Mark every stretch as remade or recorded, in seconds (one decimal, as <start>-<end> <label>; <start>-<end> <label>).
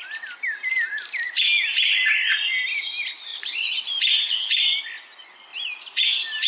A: 0.0-0.7 recorded; 0.7-1.4 remade; 1.4-3.3 recorded; 3.3-4.8 remade; 4.8-6.5 recorded